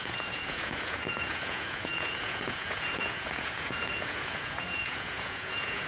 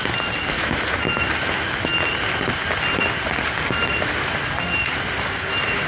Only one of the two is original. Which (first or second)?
second